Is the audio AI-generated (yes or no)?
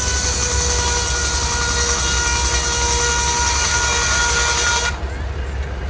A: no